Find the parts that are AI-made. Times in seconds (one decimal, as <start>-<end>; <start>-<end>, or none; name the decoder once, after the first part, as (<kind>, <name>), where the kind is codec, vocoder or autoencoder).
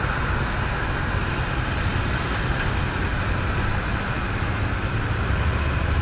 none